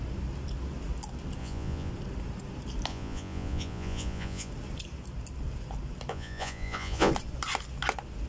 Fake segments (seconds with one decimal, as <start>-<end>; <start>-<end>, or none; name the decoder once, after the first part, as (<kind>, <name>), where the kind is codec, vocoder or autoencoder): 1.4-1.9 (vocoder, Vocos); 2.9-4.5; 6.1-7.1